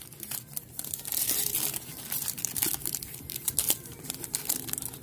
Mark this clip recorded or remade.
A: remade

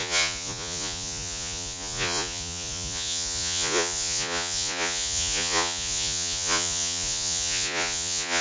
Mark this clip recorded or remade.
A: remade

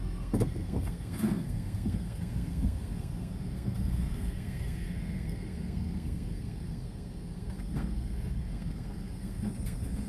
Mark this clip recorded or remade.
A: remade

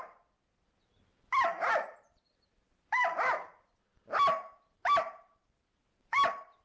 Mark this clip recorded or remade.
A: recorded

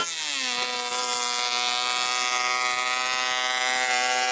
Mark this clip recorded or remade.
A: recorded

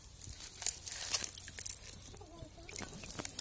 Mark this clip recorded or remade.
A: recorded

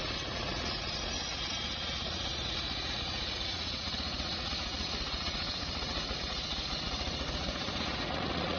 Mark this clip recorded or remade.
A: remade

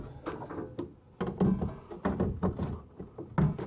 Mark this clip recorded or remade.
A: recorded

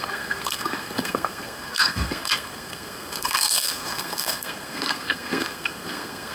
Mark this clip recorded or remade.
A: remade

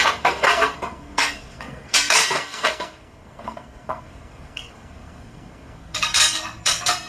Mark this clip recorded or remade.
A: remade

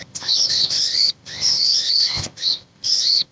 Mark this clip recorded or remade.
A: remade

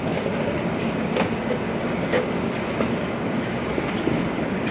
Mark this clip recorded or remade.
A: remade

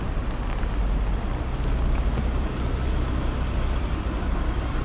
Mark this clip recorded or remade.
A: recorded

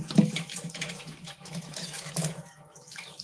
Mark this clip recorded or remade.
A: remade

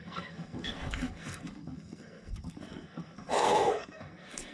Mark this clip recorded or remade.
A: remade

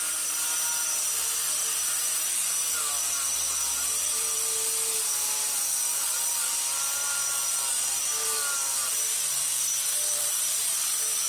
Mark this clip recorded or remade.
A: recorded